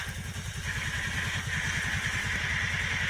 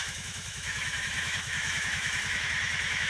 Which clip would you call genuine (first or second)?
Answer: first